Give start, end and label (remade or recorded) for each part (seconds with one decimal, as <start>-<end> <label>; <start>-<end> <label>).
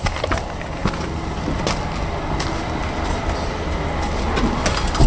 0.0-5.1 recorded